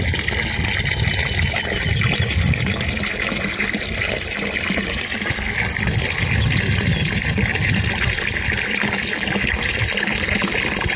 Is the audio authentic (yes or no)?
yes